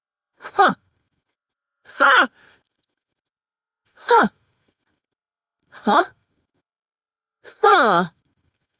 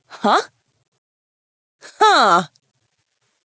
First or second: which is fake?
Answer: first